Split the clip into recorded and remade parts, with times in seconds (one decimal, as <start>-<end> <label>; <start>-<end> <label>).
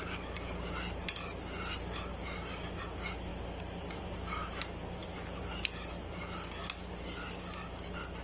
0.0-5.0 recorded; 5.0-7.3 remade; 7.3-8.2 recorded